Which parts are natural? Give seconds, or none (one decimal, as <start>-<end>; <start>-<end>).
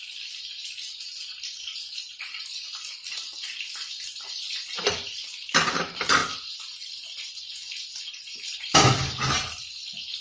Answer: 0.0-10.2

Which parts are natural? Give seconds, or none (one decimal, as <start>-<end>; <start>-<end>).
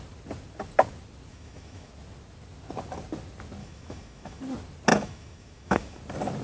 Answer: 0.0-1.3; 1.9-3.6; 4.4-4.9; 6.0-6.4